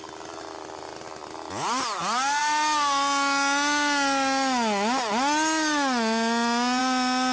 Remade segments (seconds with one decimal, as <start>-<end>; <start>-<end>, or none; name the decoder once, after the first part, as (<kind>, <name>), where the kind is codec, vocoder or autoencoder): none